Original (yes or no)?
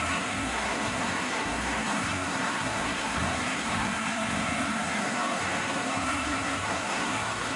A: no